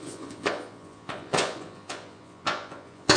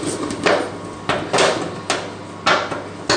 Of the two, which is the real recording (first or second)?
second